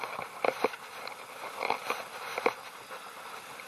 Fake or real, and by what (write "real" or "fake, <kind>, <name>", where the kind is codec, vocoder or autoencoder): real